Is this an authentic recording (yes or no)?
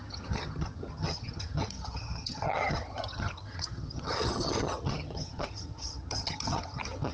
no